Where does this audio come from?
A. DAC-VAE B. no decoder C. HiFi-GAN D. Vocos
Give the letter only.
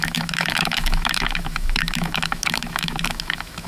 A